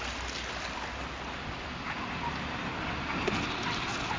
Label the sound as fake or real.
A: real